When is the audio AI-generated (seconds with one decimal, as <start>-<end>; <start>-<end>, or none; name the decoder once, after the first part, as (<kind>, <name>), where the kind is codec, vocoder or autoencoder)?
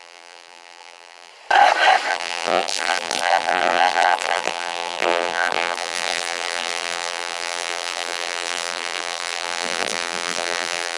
0.0-1.3 (vocoder, BigVGAN v2); 2.1-11.0